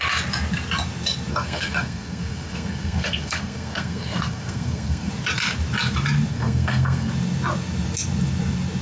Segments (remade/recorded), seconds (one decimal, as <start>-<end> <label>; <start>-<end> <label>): 0.0-1.3 recorded; 1.3-5.1 remade; 5.1-6.3 recorded; 6.3-7.1 remade; 7.1-8.8 recorded

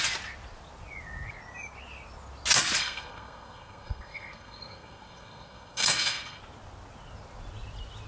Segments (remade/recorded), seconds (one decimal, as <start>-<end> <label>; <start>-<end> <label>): 0.0-2.8 recorded; 2.8-6.4 remade; 6.4-8.1 recorded